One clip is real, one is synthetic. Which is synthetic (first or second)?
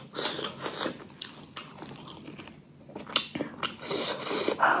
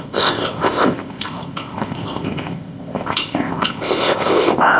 second